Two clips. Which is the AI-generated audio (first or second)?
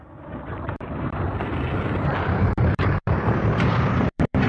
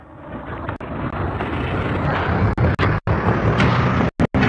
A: first